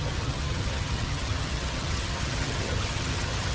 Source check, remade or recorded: remade